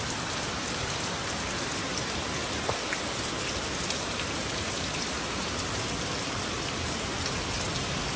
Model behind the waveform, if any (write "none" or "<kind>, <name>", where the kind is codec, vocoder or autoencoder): none